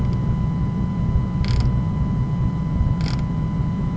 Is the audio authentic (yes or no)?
yes